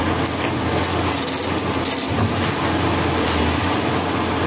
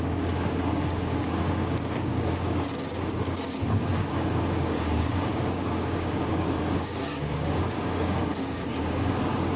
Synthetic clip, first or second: second